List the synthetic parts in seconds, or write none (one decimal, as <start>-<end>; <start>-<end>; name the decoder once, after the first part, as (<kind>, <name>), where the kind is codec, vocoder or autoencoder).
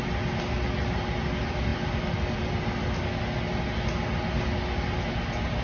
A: none